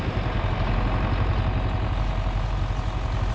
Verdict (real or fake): real